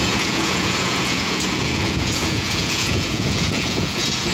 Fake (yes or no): yes